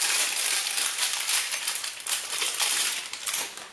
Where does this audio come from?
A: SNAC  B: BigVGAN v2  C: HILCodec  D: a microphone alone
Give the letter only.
B